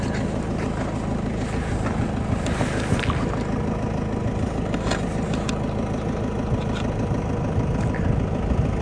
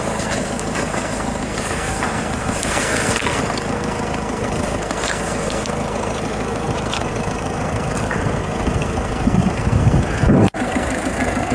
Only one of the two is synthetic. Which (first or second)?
second